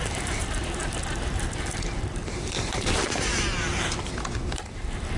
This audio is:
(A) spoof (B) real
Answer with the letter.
A